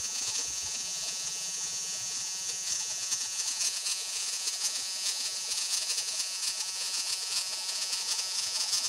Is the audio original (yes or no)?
no